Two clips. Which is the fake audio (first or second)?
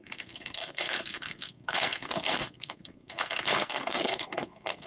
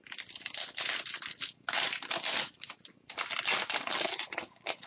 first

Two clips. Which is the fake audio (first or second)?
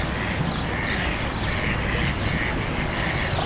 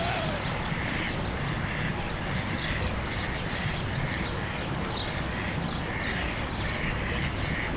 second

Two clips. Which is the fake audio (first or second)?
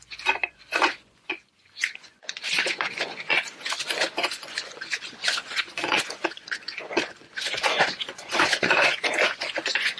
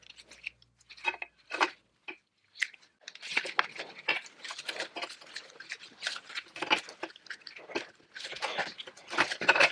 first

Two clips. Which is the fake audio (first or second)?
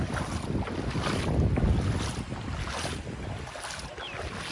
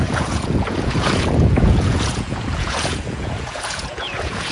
second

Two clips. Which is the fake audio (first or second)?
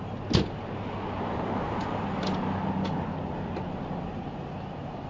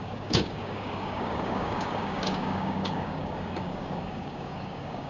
second